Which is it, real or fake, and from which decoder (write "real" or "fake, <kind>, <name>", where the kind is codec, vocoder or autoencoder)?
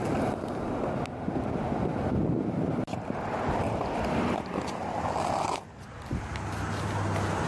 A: real